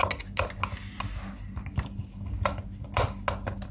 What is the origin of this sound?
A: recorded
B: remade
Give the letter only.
A